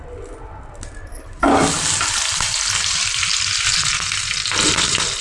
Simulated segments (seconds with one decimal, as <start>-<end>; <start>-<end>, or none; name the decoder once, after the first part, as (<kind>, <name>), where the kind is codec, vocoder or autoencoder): none